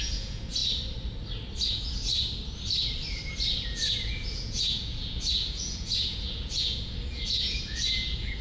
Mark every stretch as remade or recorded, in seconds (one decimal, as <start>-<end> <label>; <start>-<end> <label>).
0.0-0.6 remade; 0.6-1.7 recorded; 1.7-2.1 remade; 2.1-3.6 recorded; 3.6-8.4 remade